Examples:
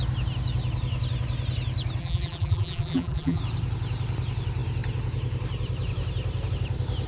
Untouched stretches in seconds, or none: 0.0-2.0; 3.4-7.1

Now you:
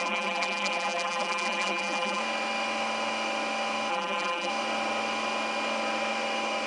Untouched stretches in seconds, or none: 2.2-3.9; 4.5-6.7

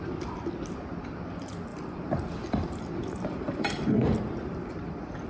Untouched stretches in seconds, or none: 0.0-1.7